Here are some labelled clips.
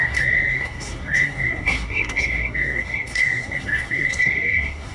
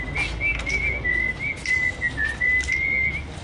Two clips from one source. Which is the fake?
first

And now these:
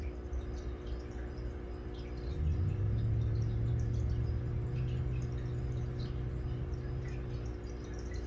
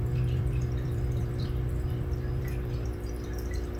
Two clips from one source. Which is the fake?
second